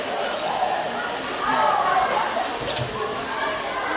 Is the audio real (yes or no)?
yes